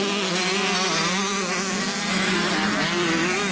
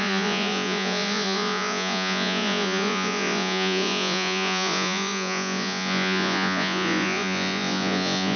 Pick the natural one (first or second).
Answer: first